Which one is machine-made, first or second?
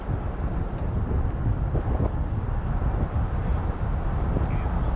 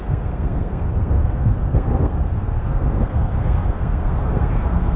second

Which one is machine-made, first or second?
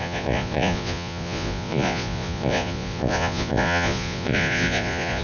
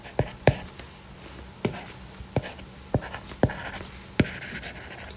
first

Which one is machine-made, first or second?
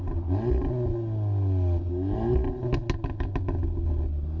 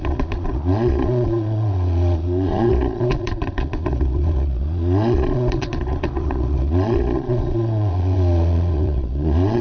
second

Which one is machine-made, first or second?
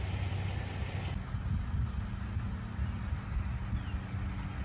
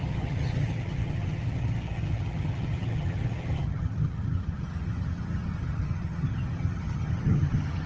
second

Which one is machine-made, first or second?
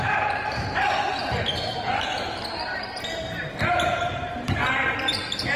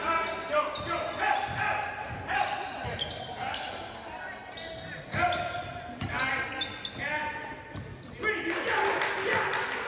first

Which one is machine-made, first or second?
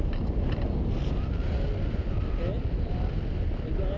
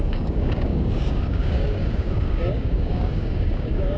second